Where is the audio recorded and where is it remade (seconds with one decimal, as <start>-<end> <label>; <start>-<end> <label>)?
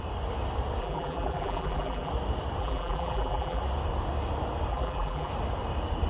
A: 0.0-0.8 recorded; 0.8-2.1 remade; 2.1-2.6 recorded; 2.6-3.6 remade; 3.6-4.7 recorded; 4.7-5.3 remade; 5.3-6.1 recorded